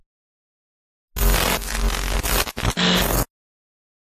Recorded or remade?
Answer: recorded